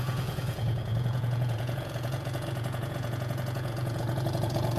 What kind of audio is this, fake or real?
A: fake